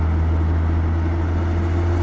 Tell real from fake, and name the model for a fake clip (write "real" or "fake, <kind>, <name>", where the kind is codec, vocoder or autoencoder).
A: real